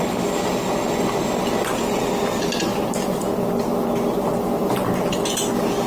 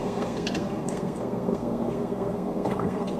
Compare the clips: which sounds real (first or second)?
first